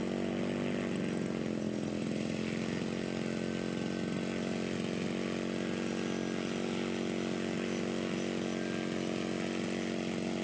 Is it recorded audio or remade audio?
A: recorded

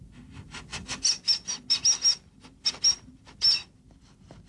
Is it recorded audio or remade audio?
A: recorded